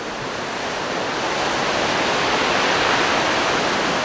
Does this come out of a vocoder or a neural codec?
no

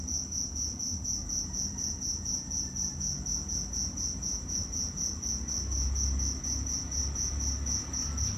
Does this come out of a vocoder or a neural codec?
no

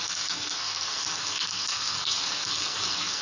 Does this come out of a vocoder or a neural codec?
yes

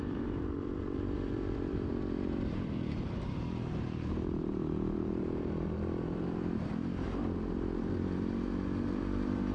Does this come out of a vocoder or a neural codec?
yes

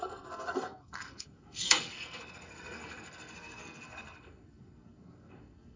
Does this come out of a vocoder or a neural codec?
yes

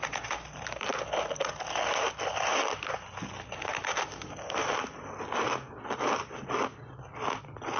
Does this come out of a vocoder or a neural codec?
no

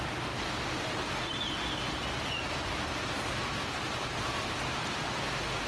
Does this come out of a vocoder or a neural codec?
no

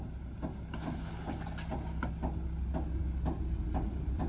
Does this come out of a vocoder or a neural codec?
no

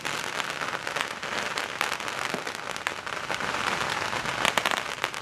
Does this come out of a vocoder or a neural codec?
no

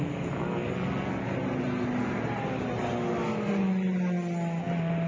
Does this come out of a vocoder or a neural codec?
no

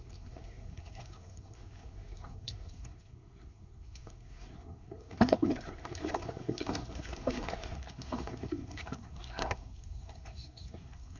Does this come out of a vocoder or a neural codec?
yes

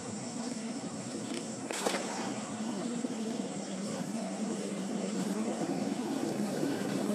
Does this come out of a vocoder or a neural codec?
yes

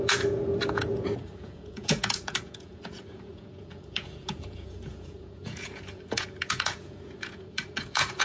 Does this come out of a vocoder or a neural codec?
yes